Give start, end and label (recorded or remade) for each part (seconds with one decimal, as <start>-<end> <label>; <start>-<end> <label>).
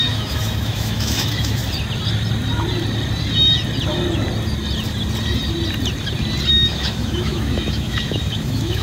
0.0-1.6 remade; 1.6-6.5 recorded; 6.5-8.8 remade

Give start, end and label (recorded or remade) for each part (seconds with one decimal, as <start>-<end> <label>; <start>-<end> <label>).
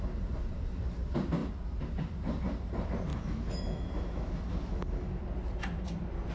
0.0-3.1 recorded; 3.1-5.2 remade; 5.2-6.3 recorded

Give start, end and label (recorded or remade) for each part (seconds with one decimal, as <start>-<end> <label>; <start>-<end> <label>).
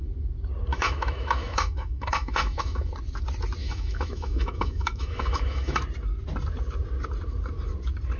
0.0-0.7 recorded; 0.7-2.9 remade; 2.9-3.6 recorded; 3.6-5.8 remade; 5.8-8.2 recorded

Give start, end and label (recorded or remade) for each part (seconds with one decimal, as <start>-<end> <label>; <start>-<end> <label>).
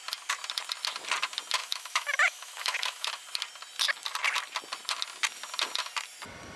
0.0-1.6 recorded; 1.6-3.1 remade; 3.1-6.6 recorded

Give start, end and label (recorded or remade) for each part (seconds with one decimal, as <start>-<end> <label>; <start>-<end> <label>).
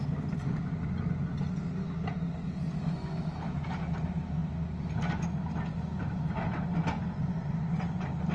0.0-8.3 recorded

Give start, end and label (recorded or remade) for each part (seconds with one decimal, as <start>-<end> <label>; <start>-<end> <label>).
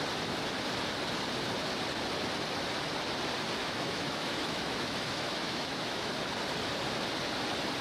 0.0-3.6 recorded; 3.6-6.1 remade; 6.1-7.8 recorded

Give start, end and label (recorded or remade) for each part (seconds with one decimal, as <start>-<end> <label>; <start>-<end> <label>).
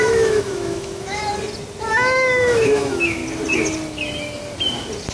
0.0-1.2 remade; 1.2-1.9 recorded; 1.9-3.2 remade; 3.2-5.1 recorded